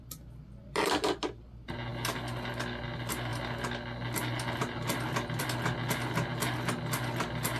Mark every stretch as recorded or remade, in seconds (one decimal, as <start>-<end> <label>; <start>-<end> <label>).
0.0-7.6 recorded